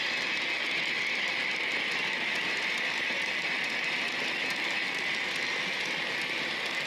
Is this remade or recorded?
recorded